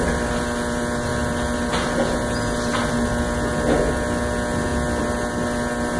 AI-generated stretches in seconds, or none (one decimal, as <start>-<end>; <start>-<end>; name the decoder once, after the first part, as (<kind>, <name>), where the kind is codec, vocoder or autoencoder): 1.1-1.7 (vocoder, BigVGAN v2)